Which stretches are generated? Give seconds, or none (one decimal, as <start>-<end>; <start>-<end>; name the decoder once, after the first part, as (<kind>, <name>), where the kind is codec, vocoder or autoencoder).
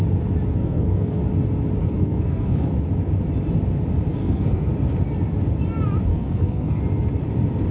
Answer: 0.5-1.2 (codec, SNAC); 1.8-2.7; 4.1-4.7; 6.1-6.8